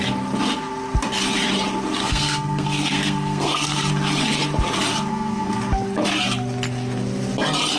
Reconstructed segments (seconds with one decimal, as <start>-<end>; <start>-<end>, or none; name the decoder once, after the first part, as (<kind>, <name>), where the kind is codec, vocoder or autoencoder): 2.0-3.9 (codec, SNAC); 5.1-5.6